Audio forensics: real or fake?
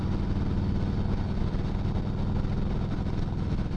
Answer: real